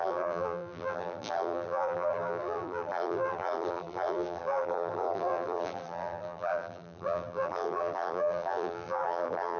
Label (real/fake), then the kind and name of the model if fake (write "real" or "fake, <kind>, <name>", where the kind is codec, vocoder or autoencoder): fake, vocoder, BigVGAN v2